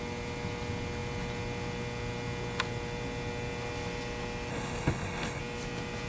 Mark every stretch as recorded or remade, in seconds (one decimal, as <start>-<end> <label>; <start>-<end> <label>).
0.0-4.5 recorded; 4.5-5.4 remade; 5.4-6.1 recorded